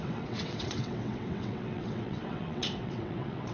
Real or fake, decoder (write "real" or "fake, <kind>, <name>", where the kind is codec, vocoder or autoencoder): fake, vocoder, WaveNeXt